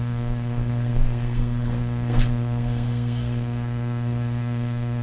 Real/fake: fake